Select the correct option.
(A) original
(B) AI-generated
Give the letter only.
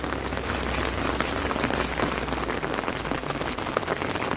A